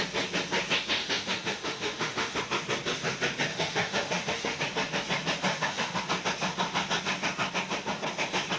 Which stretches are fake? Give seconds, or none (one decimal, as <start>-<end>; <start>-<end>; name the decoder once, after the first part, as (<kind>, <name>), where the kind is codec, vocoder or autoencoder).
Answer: 1.0-2.4 (autoencoder, DAC-VAE); 3.5-4.6; 5.5-6.0